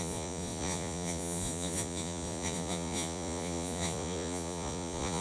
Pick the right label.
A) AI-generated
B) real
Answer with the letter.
A